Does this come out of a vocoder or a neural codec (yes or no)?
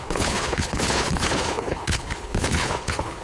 yes